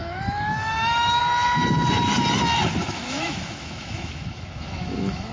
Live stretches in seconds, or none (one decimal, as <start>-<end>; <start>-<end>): 1.2-2.8